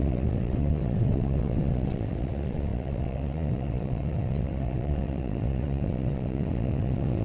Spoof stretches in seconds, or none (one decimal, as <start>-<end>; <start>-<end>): 0.0-7.2